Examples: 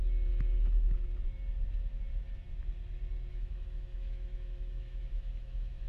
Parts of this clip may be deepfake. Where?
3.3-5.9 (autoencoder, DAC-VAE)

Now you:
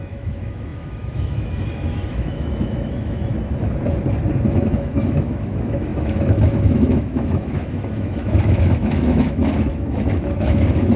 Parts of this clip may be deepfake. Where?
0.0-3.3 (autoencoder, DAC-VAE); 4.5-11.0

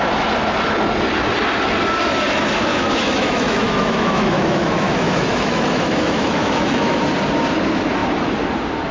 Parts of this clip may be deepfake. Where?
2.7-7.0 (autoencoder, DAC-VAE)